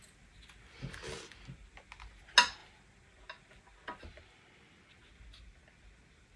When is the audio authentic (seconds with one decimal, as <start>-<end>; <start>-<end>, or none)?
0.0-6.4